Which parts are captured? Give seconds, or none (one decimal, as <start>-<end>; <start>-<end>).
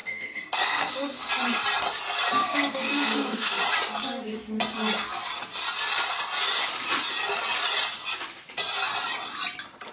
1.3-2.4; 3.6-9.9